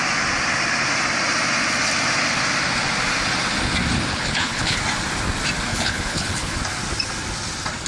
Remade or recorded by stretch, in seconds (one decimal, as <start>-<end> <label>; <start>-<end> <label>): 0.0-4.1 recorded; 4.1-4.8 remade; 4.8-5.7 recorded; 5.7-6.6 remade; 6.6-7.9 recorded